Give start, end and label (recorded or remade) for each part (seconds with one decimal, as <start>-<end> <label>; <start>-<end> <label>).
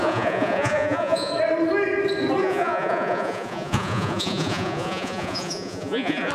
0.0-1.3 remade; 1.3-2.4 recorded; 2.4-6.3 remade